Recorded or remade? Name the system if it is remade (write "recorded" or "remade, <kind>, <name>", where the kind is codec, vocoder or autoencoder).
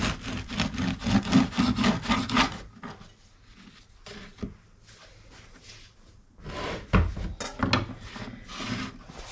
recorded